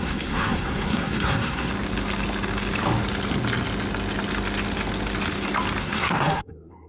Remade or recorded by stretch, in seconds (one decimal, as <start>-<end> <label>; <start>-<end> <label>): 0.0-1.7 remade; 1.7-5.8 recorded; 5.8-6.9 remade